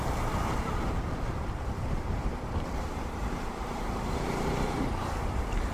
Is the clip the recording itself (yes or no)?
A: no